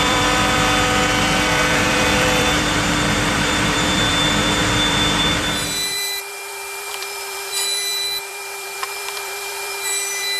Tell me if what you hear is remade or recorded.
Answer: remade